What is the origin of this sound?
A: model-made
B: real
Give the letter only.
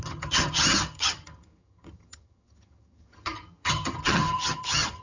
A